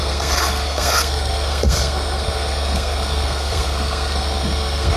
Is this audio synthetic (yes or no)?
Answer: yes